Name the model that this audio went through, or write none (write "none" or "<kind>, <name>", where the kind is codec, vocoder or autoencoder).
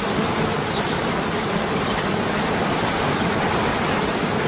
none